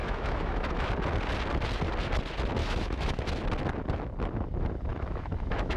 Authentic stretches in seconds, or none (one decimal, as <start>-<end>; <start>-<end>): 0.9-2.6; 3.2-4.9